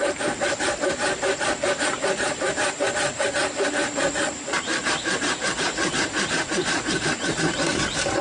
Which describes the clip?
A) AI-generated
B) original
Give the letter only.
A